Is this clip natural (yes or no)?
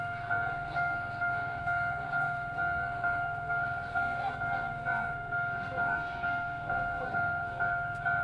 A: no